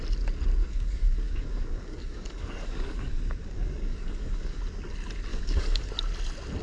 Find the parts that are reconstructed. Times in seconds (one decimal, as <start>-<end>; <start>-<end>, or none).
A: 0.6-4.6; 5.3-5.9